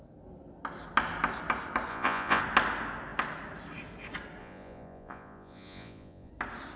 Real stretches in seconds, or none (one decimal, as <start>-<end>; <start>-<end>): 0.0-1.9; 2.4-4.4; 6.3-6.8